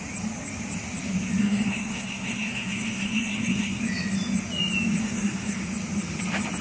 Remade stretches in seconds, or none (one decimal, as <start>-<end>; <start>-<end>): 1.4-3.8; 5.0-5.6